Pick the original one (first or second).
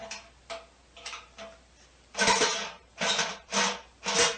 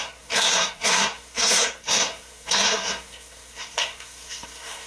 first